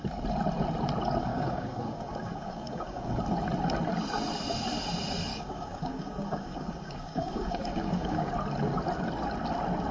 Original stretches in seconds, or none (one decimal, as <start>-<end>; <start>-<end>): 0.0-1.3; 3.2-5.3; 8.3-9.9